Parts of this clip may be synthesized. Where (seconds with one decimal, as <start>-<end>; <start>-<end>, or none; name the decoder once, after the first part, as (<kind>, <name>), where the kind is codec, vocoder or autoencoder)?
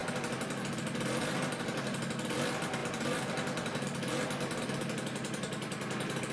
none